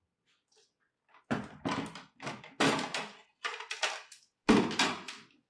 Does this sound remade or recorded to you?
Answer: recorded